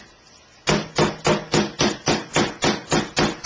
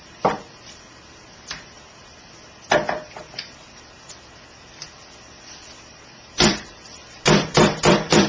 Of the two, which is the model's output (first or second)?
second